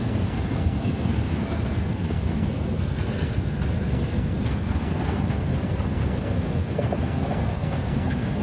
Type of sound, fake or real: fake